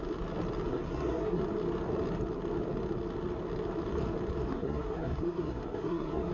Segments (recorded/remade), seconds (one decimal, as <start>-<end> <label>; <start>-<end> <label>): 0.0-0.7 recorded; 0.7-1.4 remade; 1.4-4.5 recorded; 4.5-6.3 remade